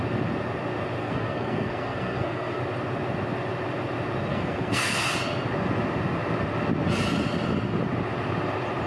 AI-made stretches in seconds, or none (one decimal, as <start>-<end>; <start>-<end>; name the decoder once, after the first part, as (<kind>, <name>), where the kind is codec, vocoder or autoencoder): 1.0-2.6 (codec, SNAC); 4.3-5.0